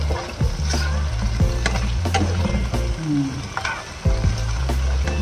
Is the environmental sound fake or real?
real